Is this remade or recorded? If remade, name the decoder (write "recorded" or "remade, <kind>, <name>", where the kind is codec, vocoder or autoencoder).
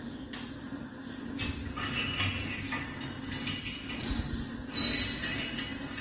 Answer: recorded